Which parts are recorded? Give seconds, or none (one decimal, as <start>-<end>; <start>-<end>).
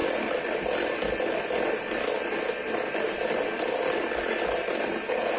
0.0-5.4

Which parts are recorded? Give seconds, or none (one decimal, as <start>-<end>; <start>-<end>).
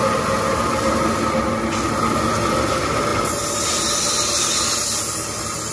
0.0-5.7